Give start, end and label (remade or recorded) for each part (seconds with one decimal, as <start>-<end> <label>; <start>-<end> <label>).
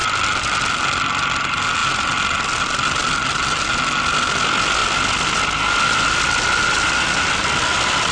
0.0-8.1 recorded